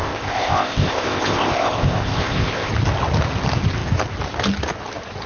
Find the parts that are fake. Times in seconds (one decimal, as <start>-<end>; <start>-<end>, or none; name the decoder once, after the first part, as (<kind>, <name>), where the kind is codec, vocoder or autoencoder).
0.0-2.7 (codec, ZipCodec)